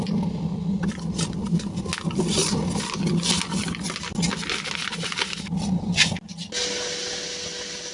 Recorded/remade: recorded